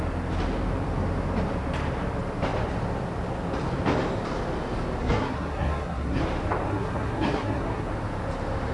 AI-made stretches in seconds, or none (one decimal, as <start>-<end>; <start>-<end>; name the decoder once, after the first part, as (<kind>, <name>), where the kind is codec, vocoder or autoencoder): 5.0-6.2 (codec, SNAC); 6.7-7.9